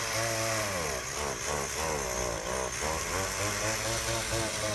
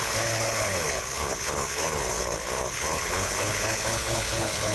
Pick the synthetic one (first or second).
second